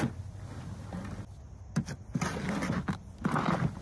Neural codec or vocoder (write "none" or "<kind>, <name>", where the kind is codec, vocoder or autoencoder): none